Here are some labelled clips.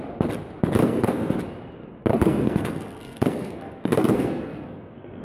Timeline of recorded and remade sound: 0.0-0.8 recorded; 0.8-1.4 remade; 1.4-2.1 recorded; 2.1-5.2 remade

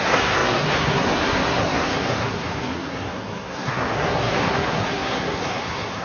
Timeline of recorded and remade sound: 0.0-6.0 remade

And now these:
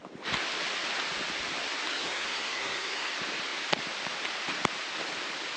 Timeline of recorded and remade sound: 0.0-1.9 recorded; 1.9-3.1 remade; 3.1-5.6 recorded

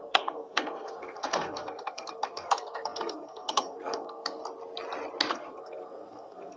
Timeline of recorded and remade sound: 0.0-4.4 remade; 4.4-5.3 recorded; 5.3-6.6 remade

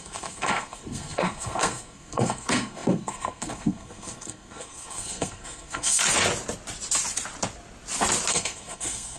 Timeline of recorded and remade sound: 0.0-6.0 remade; 6.0-8.3 recorded; 8.3-9.2 remade

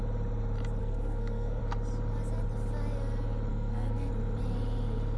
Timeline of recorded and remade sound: 0.0-0.8 recorded; 0.8-1.6 remade; 1.6-3.5 recorded; 3.5-4.1 remade; 4.1-5.2 recorded

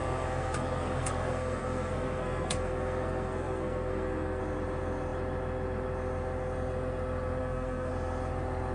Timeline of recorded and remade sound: 0.0-4.4 remade; 4.4-7.4 recorded; 7.4-7.9 remade; 7.9-8.7 recorded